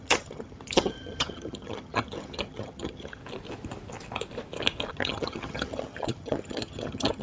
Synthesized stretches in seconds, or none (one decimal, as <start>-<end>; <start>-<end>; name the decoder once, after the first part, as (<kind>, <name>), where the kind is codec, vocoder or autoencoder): 0.0-3.2 (vocoder, HiFi-GAN); 4.9-7.2